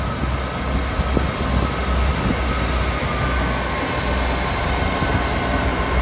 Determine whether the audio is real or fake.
real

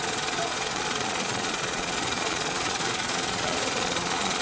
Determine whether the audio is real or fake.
fake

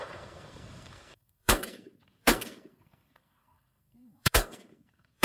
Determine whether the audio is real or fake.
fake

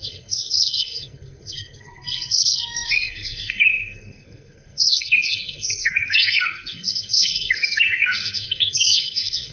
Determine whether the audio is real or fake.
fake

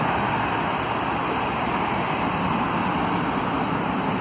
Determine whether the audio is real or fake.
real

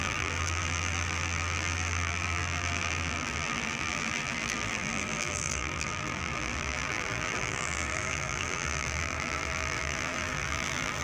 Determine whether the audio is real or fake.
fake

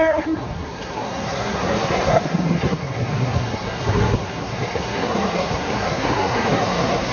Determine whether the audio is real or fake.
fake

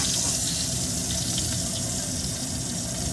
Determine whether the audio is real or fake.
real